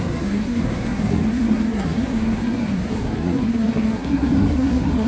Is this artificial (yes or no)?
yes